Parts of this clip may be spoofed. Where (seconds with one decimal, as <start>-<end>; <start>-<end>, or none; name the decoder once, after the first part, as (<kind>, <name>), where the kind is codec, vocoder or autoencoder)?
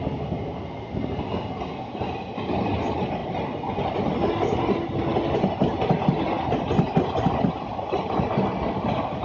none